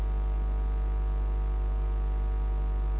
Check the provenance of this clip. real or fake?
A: real